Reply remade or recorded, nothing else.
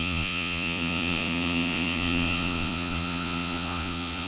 remade